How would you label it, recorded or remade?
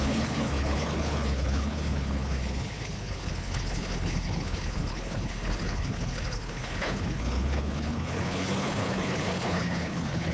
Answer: remade